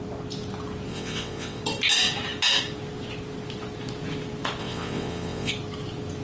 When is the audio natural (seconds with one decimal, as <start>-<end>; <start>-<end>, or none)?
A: 0.0-0.9; 1.6-4.6; 5.5-6.2